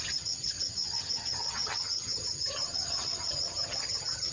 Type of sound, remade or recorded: remade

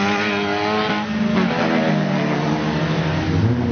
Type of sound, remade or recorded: recorded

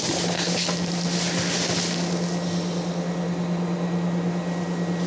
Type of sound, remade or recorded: recorded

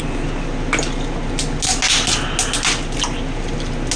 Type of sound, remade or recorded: recorded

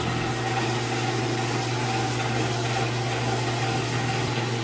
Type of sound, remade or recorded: recorded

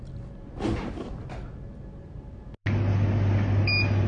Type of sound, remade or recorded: recorded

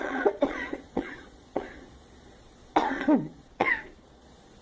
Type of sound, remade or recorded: remade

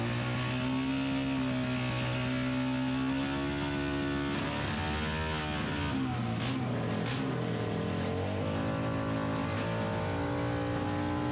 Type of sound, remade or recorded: recorded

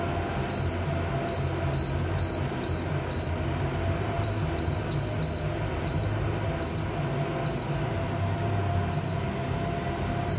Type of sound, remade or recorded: recorded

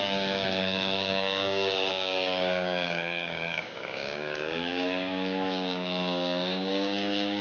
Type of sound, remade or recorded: remade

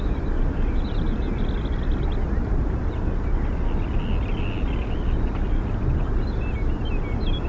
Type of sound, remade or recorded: recorded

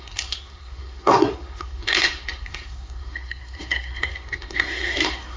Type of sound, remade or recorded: remade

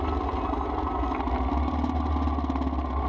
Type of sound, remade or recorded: recorded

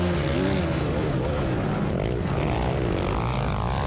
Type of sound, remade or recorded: recorded